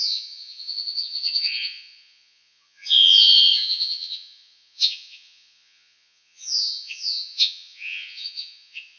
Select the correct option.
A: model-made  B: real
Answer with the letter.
A